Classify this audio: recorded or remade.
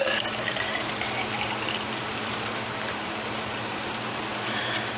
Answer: remade